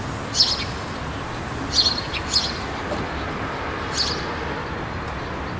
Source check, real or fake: real